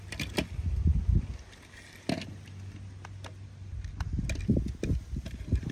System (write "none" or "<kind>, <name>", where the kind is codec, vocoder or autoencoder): none